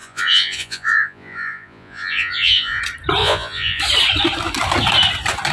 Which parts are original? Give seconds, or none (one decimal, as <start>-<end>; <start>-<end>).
2.8-3.2; 3.8-5.5